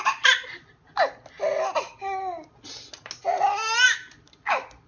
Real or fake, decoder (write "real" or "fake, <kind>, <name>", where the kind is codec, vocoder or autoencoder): real